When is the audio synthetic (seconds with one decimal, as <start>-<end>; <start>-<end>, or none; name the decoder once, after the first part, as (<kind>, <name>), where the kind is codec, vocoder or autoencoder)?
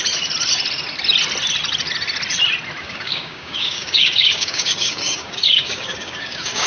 2.8-6.7 (codec, DAC)